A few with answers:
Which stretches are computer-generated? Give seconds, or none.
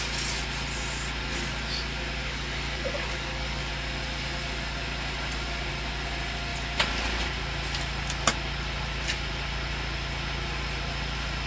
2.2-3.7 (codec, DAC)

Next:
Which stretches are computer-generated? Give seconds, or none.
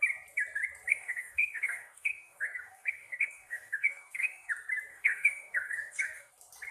0.9-4.5 (codec, DAC); 4.9-6.3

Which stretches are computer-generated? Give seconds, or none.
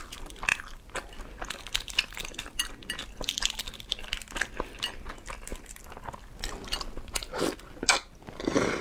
none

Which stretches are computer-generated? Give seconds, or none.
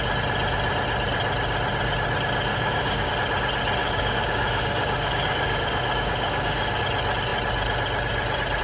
2.5-3.1 (codec, DAC); 3.8-6.8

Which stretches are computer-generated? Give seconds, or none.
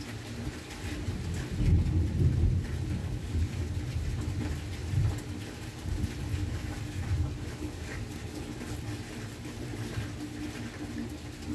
3.0-3.6 (codec, DAC); 6.3-8.0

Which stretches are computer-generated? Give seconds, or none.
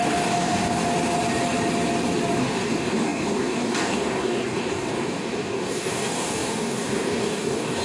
0.0-0.8 (codec, DAC); 2.4-7.8